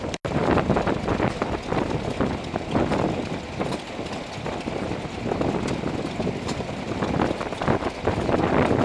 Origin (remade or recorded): recorded